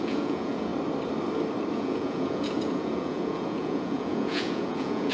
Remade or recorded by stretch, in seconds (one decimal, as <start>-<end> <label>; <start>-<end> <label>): 0.0-0.7 remade; 0.7-1.7 recorded; 1.7-5.1 remade